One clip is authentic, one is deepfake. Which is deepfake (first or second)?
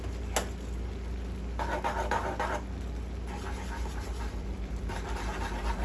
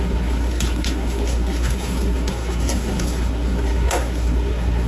second